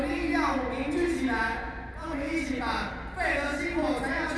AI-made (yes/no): no